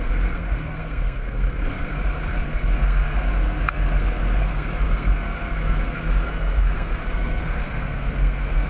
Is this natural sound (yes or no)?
no